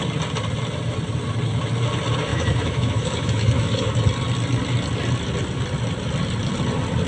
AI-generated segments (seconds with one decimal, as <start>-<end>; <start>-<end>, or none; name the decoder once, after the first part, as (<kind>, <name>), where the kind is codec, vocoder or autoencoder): 2.3-3.9 (autoencoder, DAC-VAE)